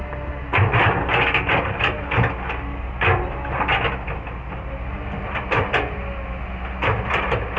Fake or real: real